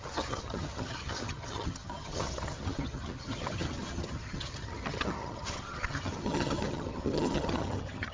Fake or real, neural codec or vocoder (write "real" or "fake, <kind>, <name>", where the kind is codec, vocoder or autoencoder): fake, vocoder, HiFi-GAN